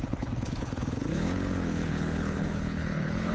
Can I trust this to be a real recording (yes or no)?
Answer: no